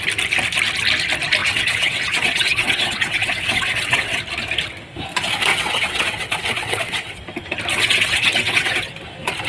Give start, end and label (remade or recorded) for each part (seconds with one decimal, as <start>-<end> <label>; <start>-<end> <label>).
0.0-1.4 recorded; 1.4-4.2 remade; 4.2-5.5 recorded; 5.5-7.2 remade; 7.2-7.7 recorded; 7.7-8.9 remade; 8.9-9.5 recorded

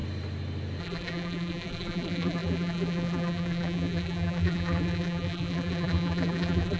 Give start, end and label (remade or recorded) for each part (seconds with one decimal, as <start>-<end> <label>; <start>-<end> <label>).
0.0-0.8 recorded; 0.8-6.8 remade

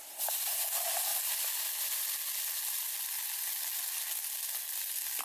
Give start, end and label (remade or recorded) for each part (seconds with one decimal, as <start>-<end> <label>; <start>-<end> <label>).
0.0-5.2 recorded

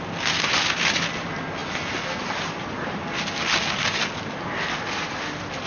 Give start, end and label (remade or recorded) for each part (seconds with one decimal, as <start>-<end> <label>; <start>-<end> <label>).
0.0-5.7 recorded

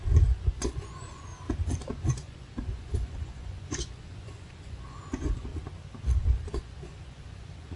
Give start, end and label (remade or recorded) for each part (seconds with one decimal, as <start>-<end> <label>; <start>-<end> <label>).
0.0-1.3 remade; 1.3-1.9 recorded; 1.9-5.5 remade; 5.5-6.2 recorded; 6.2-7.8 remade